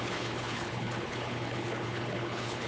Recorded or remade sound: remade